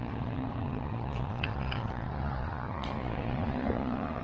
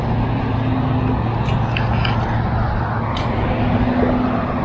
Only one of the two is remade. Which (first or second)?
first